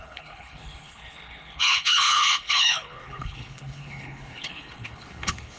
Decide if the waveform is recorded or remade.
remade